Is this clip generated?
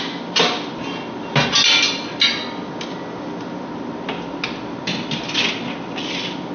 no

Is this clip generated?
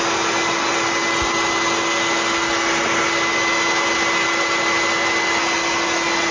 no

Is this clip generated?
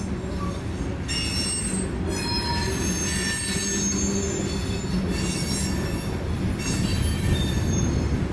no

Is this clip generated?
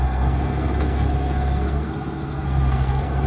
yes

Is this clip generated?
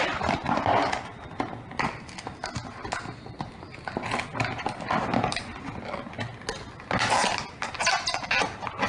no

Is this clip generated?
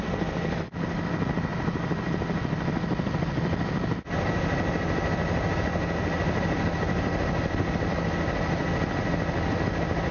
no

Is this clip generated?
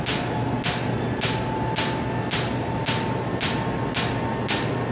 no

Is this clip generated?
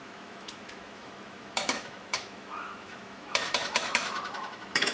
yes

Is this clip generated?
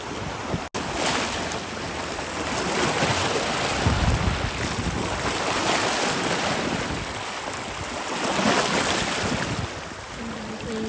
no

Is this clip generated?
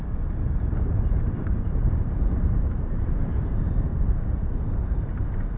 yes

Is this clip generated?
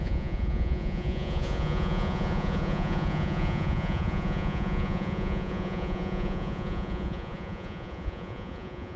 yes